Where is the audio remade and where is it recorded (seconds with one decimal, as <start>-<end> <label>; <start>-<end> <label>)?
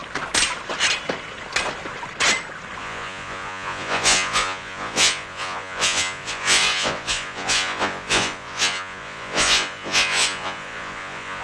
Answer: 0.0-2.8 recorded; 2.8-11.4 remade